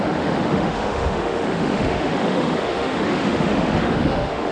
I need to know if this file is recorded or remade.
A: remade